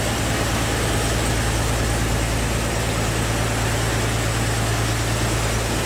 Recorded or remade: recorded